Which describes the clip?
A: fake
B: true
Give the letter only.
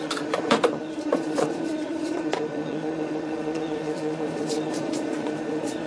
A